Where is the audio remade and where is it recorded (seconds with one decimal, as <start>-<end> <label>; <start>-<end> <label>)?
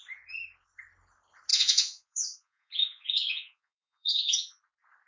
0.0-1.5 recorded; 1.5-4.6 remade; 4.6-5.1 recorded